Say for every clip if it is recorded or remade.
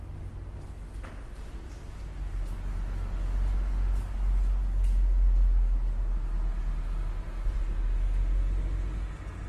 recorded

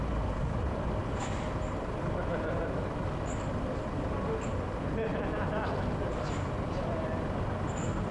recorded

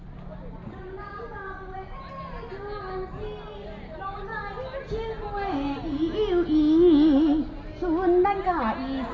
recorded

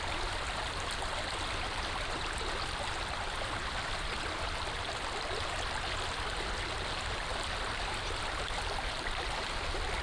recorded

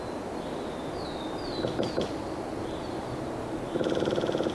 recorded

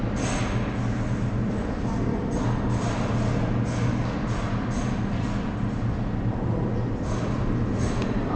recorded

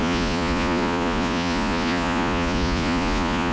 remade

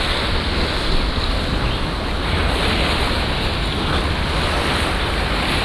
recorded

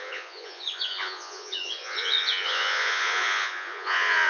remade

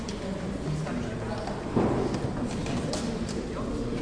recorded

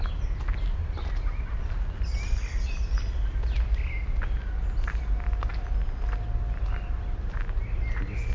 recorded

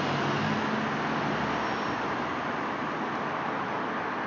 recorded